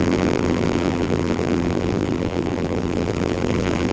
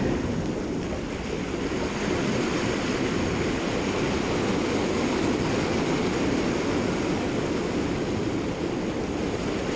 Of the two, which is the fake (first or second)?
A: first